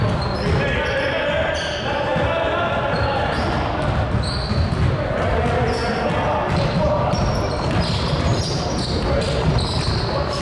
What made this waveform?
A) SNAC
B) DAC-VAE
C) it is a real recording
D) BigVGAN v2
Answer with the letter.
C